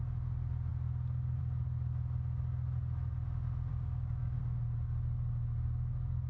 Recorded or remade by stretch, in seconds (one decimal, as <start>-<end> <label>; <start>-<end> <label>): 0.0-3.7 recorded; 3.7-4.4 remade; 4.4-6.3 recorded